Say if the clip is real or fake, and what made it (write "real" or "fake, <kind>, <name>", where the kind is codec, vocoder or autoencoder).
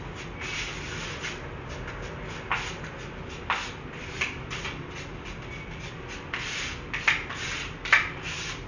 real